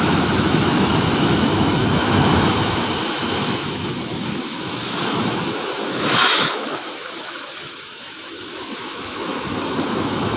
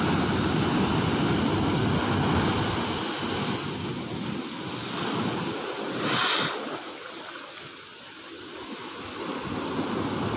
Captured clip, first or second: second